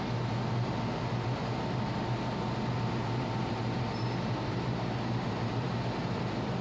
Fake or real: real